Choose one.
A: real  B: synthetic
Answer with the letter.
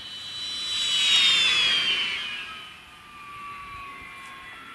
A